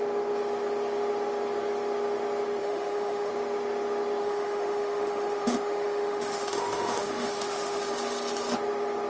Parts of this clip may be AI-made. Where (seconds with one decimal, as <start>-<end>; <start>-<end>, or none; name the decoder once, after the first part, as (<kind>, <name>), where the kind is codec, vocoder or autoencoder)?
2.6-3.3 (autoencoder, DAC-VAE); 4.2-7.9